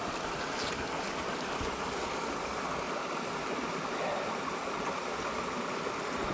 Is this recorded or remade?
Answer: recorded